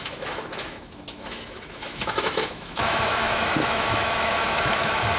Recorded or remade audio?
remade